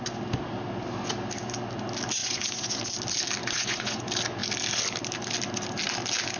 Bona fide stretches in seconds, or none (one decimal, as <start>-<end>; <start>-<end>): 0.0-2.2; 2.8-3.4; 4.0-6.4